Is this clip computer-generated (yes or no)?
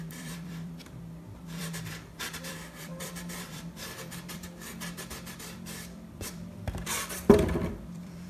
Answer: yes